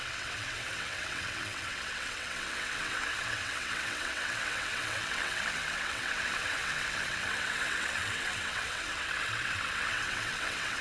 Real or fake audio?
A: fake